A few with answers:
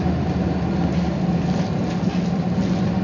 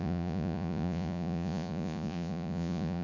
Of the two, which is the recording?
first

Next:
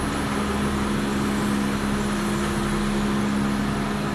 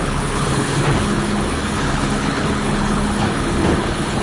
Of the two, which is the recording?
first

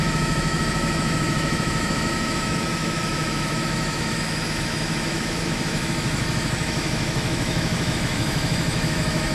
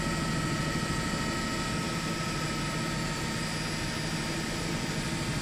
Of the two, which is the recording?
second